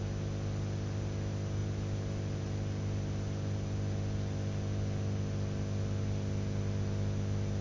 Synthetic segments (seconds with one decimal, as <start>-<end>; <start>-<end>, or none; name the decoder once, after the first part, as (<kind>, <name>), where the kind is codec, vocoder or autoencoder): none